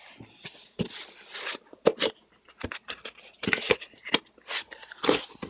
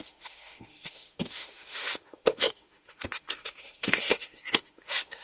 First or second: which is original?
first